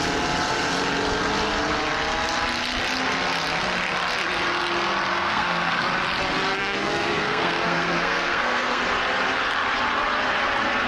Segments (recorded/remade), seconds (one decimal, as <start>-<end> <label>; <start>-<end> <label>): 0.0-5.1 recorded; 5.1-5.8 remade; 5.8-6.6 recorded; 6.6-8.8 remade; 8.8-10.9 recorded